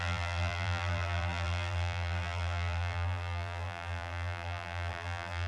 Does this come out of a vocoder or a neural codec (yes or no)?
yes